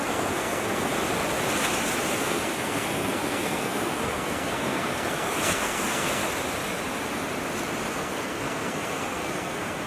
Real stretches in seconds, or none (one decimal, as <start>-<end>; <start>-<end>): 0.9-2.2; 6.2-7.9

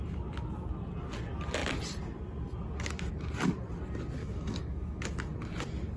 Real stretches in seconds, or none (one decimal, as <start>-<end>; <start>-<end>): 0.0-4.2; 5.1-6.0

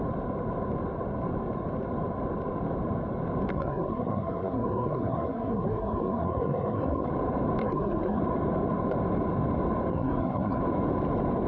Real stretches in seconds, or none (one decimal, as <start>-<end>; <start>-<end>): 0.0-3.5; 7.1-7.6; 8.2-9.9; 10.6-11.5

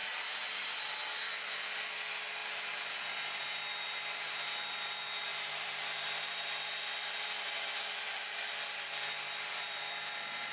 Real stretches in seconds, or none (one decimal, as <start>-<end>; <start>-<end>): 0.8-2.4; 3.4-5.3; 9.9-10.5